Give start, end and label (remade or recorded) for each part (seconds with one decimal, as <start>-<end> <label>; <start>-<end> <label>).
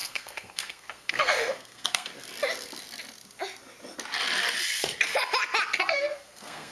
0.0-2.1 remade; 2.1-5.8 recorded; 5.8-6.7 remade